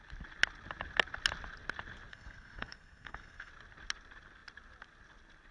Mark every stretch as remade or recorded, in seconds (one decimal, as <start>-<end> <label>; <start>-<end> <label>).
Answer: 0.0-2.1 recorded; 2.1-3.5 remade; 3.5-5.5 recorded